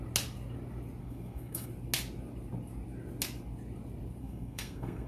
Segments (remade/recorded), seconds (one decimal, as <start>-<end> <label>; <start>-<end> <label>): 0.0-1.0 recorded; 1.0-1.7 remade; 1.7-4.2 recorded; 4.2-5.1 remade